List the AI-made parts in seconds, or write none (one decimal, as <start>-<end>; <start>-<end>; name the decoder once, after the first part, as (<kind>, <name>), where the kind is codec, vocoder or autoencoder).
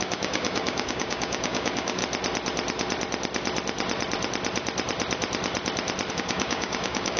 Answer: 0.0-2.0 (codec, DAC); 6.1-7.2